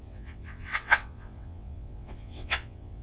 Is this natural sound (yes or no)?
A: no